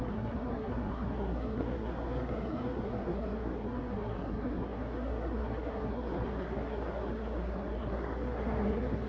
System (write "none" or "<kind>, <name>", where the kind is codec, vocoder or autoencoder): codec, SNAC